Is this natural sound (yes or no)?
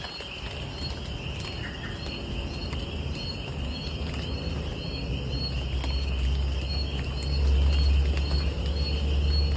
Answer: yes